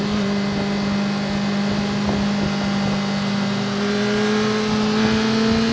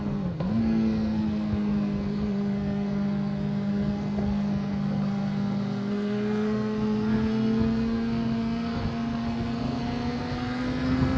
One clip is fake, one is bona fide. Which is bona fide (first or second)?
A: first